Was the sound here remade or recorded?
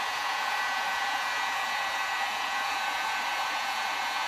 remade